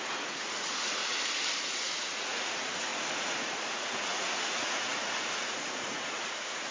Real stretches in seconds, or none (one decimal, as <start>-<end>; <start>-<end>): 1.0-1.7